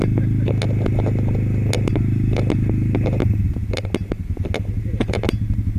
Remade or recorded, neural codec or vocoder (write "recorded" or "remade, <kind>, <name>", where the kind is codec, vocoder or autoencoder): recorded